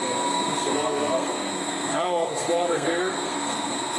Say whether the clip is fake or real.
fake